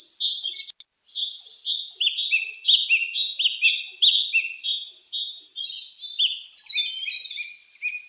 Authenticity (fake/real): real